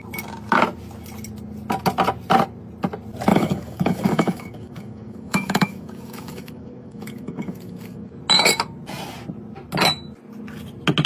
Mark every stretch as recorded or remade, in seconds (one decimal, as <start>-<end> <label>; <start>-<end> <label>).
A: 0.0-3.3 recorded; 3.3-8.2 remade; 8.2-11.1 recorded